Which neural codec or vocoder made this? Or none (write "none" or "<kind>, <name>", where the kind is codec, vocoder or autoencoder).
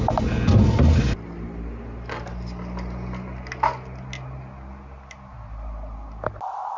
none